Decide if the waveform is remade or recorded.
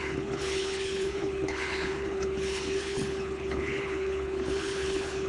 remade